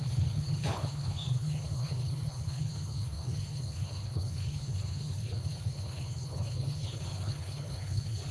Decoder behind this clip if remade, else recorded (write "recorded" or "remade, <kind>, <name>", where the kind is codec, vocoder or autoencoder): remade, codec, HILCodec